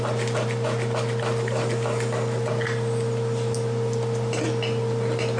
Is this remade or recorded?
recorded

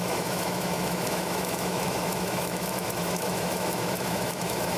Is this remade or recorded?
remade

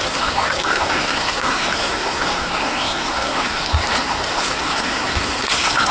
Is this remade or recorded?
remade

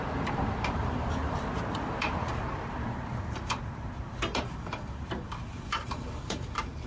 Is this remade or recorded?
remade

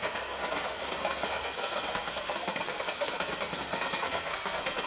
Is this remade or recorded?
remade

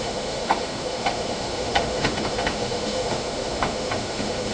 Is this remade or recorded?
remade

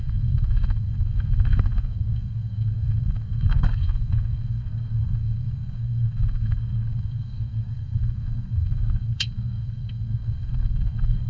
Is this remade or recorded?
remade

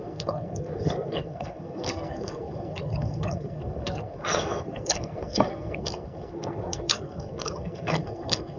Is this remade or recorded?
remade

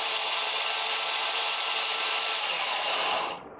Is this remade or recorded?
remade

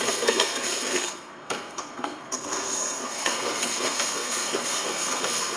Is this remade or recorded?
remade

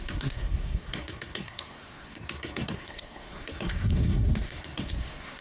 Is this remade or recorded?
remade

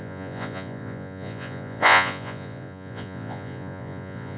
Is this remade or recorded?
remade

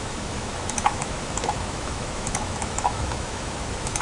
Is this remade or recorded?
remade